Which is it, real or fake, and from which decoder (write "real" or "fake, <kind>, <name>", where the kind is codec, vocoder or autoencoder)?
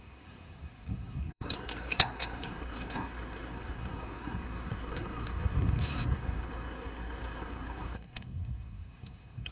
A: fake, codec, SNAC